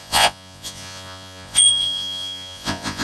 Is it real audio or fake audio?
fake